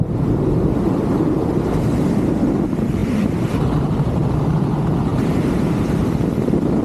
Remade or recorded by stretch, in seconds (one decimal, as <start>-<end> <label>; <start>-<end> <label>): 0.0-6.8 recorded

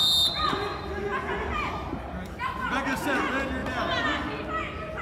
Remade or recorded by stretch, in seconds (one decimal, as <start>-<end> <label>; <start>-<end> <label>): 0.0-5.0 recorded

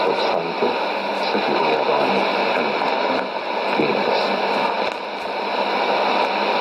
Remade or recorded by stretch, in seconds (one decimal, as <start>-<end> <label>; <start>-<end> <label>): 0.0-2.3 recorded; 2.3-3.1 remade; 3.1-6.6 recorded

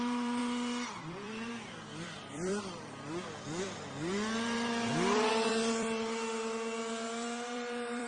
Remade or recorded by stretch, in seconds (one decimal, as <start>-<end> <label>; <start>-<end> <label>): 0.0-8.1 remade

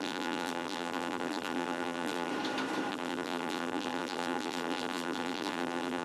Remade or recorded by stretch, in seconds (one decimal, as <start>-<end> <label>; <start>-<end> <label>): 0.0-2.3 remade; 2.3-2.9 recorded; 2.9-6.0 remade

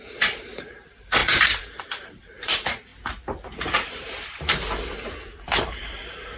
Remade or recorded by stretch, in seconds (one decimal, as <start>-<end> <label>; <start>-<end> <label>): 0.0-2.9 remade; 2.9-3.9 recorded; 3.9-6.4 remade

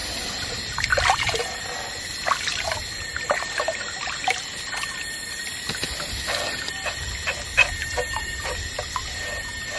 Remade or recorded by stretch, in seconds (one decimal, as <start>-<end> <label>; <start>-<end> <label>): 0.0-1.4 remade; 1.4-2.5 recorded; 2.5-4.2 remade; 4.2-7.8 recorded; 7.8-8.7 remade; 8.7-9.8 recorded